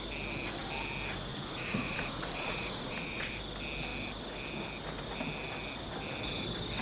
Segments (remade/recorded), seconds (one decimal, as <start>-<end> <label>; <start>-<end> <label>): 0.0-1.3 recorded; 1.3-3.3 remade; 3.3-6.8 recorded